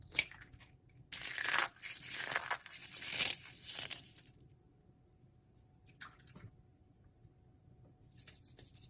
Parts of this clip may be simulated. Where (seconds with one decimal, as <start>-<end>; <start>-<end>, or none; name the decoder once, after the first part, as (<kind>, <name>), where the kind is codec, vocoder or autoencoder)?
none